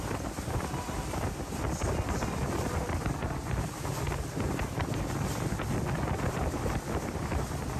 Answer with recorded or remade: remade